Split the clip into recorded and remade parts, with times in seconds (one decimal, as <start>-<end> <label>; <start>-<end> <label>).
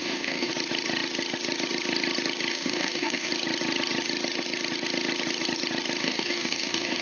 0.0-0.5 remade; 0.5-2.5 recorded; 2.5-3.3 remade; 3.3-6.0 recorded; 6.0-7.0 remade